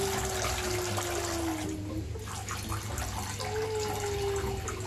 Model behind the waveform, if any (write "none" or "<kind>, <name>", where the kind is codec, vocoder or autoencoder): none